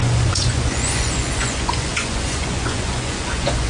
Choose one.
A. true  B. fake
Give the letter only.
B